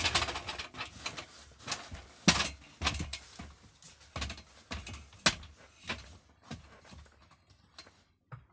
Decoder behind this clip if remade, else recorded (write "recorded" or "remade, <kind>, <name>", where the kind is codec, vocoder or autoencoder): recorded